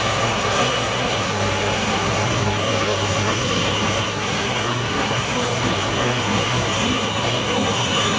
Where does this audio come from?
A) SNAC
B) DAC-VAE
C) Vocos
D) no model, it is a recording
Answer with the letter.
A